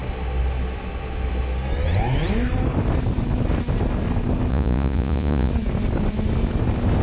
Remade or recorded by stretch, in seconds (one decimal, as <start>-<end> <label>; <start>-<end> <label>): 0.0-4.5 recorded; 4.5-5.5 remade; 5.5-7.0 recorded